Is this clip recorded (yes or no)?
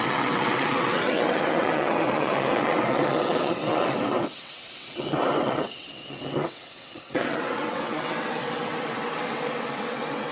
no